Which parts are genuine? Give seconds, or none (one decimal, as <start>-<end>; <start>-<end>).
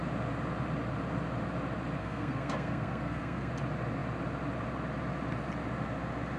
0.0-2.0; 3.5-6.4